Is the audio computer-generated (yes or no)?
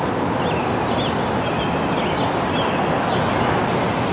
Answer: no